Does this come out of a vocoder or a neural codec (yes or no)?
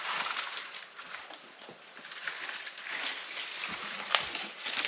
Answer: no